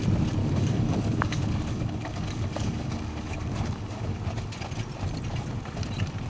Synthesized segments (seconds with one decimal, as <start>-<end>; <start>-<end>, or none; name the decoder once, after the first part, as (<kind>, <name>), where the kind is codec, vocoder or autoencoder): 0.4-4.2 (codec, DAC)